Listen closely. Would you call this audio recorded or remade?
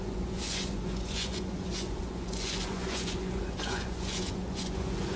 remade